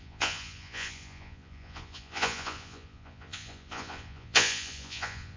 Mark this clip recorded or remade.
remade